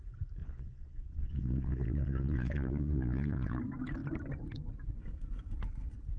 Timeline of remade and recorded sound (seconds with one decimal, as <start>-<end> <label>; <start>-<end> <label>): 0.0-0.4 recorded; 0.4-3.6 remade; 3.6-6.2 recorded